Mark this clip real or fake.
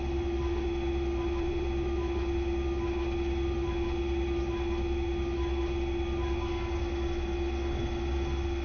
real